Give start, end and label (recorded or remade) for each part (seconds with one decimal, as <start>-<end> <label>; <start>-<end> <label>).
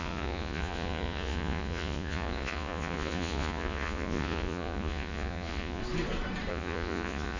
0.0-5.8 remade; 5.8-6.5 recorded; 6.5-7.4 remade